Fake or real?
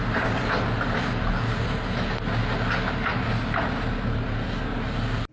real